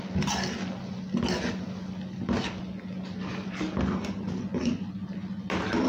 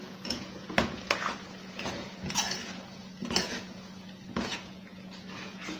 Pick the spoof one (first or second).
second